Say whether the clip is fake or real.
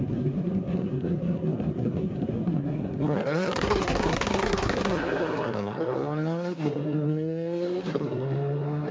fake